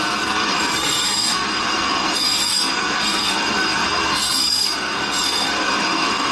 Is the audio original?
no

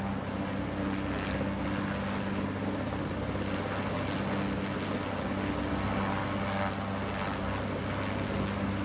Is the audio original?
yes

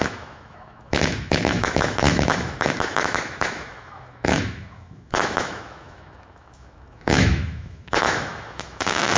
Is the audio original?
no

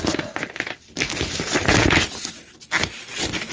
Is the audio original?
yes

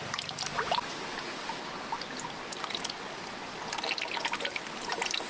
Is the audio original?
yes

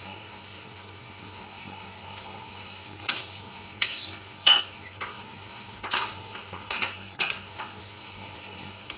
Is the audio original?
no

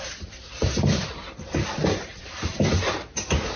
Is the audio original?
no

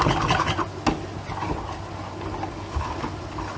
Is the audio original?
yes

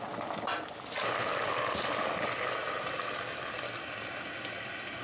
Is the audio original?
yes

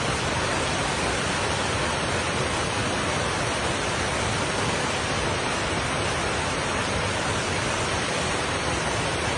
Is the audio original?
yes